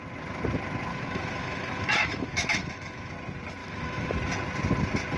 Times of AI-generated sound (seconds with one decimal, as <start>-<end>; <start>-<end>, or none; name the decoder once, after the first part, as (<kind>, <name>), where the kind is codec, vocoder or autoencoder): 0.9-3.1 (autoencoder, DAC-VAE); 3.6-4.2